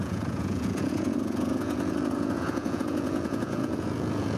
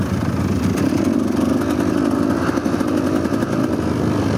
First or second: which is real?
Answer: second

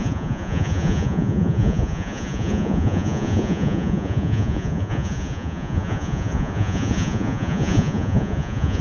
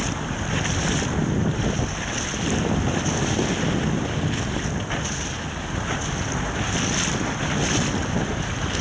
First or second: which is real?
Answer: second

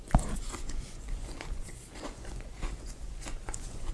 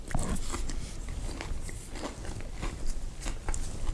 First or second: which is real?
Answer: second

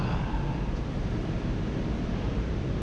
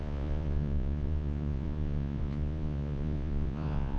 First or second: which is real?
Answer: first